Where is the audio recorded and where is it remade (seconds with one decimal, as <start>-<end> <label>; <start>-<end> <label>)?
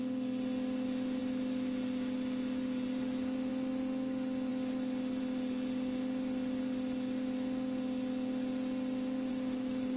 0.0-9.3 recorded; 9.3-10.0 remade